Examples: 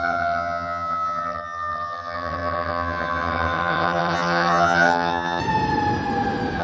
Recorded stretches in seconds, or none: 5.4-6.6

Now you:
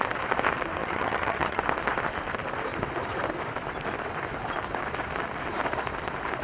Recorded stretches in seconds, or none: 0.0-0.8; 1.6-6.4